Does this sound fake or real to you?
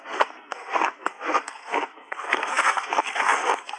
fake